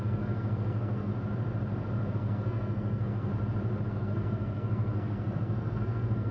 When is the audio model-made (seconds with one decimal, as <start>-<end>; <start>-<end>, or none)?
0.0-1.1; 2.1-3.3; 3.9-6.3